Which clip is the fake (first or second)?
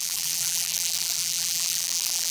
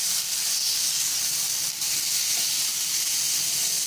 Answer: first